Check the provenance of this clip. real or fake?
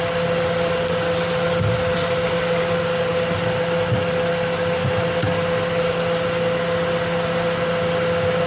real